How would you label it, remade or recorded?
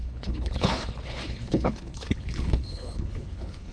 remade